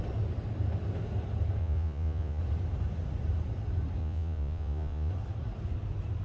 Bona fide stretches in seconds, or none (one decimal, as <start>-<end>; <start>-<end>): 0.0-1.6; 2.4-4.0; 5.1-6.2